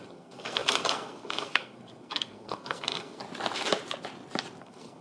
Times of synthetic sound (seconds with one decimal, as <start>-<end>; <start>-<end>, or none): 0.0-3.2; 4.6-5.0